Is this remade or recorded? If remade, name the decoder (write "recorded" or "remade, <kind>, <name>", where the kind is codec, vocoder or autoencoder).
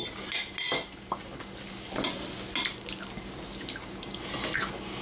recorded